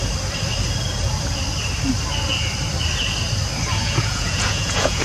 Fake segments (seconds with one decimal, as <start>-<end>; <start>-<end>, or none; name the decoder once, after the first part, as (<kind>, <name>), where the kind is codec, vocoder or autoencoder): 3.8-5.0 (vocoder, Vocos)